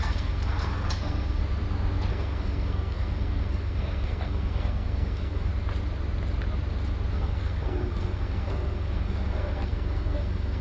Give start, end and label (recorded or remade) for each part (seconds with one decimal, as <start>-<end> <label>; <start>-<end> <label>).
0.0-1.4 remade; 1.4-2.1 recorded; 2.1-5.5 remade; 5.5-7.1 recorded; 7.1-10.6 remade